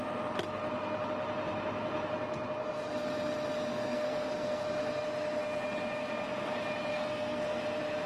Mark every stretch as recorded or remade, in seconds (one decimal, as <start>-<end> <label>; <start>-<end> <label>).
0.0-3.7 recorded; 3.7-4.6 remade; 4.6-6.9 recorded; 6.9-7.6 remade; 7.6-8.1 recorded

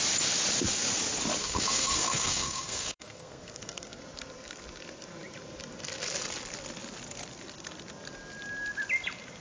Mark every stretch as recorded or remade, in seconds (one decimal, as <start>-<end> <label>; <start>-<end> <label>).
0.0-1.4 recorded; 1.4-4.0 remade; 4.0-9.4 recorded

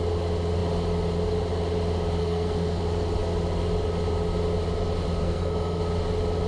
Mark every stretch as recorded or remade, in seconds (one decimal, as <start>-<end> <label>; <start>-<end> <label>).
0.0-2.2 recorded; 2.2-2.8 remade; 2.8-5.2 recorded; 5.2-5.8 remade; 5.8-6.5 recorded

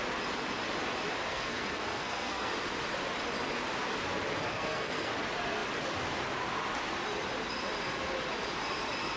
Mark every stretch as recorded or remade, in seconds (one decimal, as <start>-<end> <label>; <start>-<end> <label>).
0.0-1.3 recorded; 1.3-2.5 remade; 2.5-4.5 recorded; 4.5-5.1 remade; 5.1-9.2 recorded